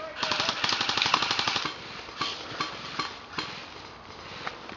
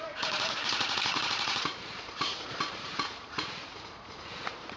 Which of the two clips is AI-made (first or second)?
second